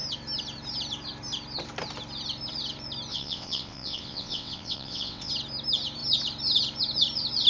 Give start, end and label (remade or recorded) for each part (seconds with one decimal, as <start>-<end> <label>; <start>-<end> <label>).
0.0-3.1 recorded; 3.1-5.3 remade; 5.3-7.5 recorded